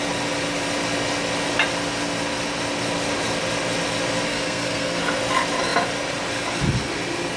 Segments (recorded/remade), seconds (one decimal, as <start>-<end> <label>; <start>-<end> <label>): 0.0-4.3 recorded; 4.3-5.0 remade; 5.0-7.4 recorded